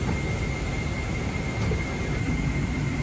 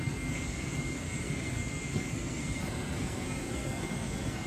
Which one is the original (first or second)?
first